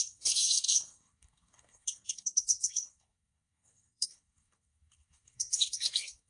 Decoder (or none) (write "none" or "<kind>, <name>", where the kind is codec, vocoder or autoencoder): codec, SNAC